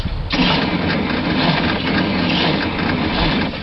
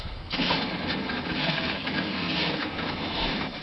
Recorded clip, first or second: first